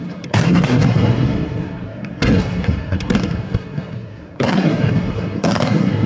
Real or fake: fake